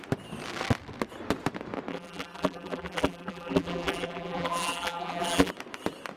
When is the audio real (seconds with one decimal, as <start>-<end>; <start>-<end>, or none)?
0.0-1.9; 5.5-6.2